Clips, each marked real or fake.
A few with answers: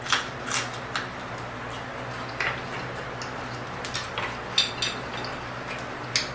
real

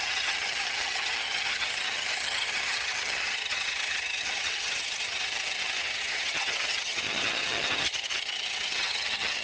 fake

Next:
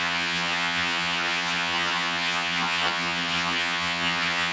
fake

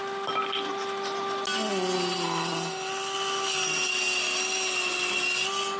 real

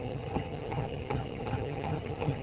fake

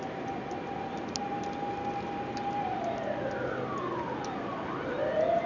real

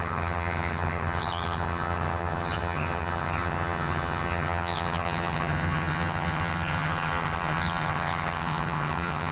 fake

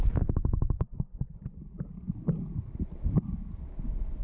real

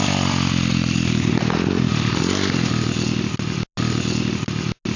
real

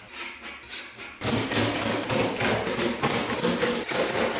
real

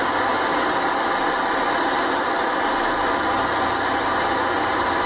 real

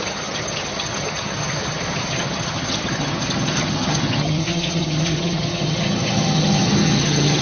fake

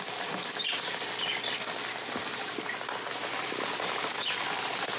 real